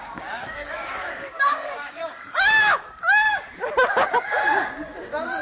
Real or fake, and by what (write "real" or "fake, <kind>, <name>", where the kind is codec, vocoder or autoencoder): fake, codec, DAC